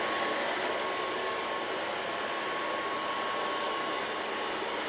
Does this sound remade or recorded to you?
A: recorded